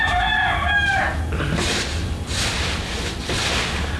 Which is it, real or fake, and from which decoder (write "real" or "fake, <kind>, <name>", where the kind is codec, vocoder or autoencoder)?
real